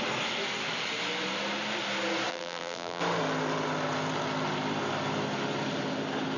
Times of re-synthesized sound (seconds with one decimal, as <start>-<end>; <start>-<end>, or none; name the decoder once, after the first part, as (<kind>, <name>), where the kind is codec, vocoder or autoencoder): 2.3-3.0 (vocoder, BigVGAN v2)